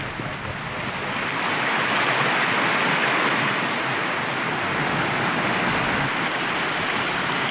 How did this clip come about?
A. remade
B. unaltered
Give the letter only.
B